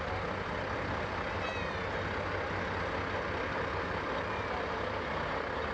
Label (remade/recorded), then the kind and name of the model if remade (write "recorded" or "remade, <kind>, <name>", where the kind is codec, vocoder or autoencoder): recorded